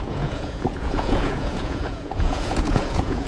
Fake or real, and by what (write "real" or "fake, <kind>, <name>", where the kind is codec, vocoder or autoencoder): fake, vocoder, Vocos